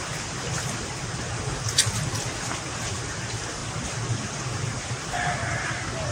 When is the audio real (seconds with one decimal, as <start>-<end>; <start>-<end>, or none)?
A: 0.0-6.1